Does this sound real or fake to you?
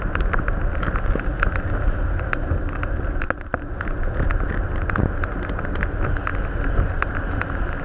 real